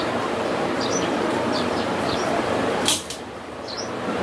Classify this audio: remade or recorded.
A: remade